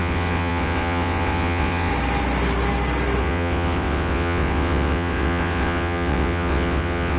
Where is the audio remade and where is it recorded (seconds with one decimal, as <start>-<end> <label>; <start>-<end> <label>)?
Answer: 0.0-1.9 remade; 1.9-3.2 recorded; 3.2-7.2 remade